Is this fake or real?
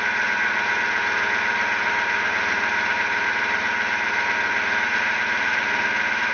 real